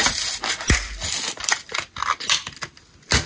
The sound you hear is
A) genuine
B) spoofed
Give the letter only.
A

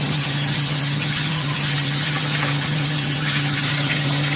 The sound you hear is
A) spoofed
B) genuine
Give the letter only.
A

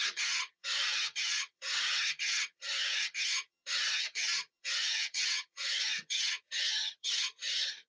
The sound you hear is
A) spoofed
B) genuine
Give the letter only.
A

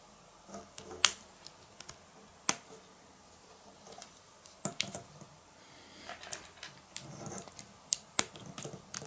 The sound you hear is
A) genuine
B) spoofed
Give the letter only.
A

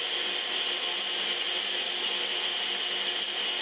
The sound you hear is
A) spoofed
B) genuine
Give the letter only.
B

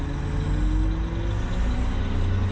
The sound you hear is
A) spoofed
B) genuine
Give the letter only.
B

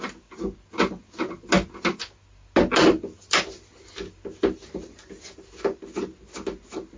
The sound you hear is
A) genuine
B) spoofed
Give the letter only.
A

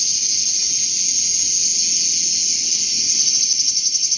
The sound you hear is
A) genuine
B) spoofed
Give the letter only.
A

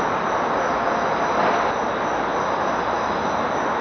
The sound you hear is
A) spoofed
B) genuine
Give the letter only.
B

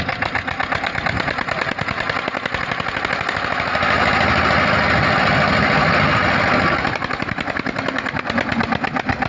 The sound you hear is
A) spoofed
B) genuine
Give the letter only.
B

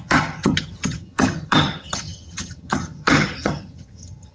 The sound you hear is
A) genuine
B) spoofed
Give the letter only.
B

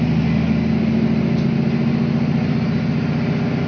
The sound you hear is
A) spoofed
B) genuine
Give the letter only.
B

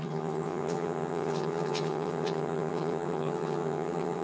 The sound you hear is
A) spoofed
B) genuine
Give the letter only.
A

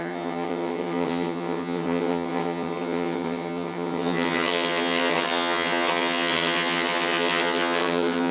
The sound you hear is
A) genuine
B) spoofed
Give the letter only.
B